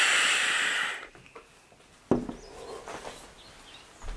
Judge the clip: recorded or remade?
recorded